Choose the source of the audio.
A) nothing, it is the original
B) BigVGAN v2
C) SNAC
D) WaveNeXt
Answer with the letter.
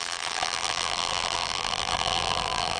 B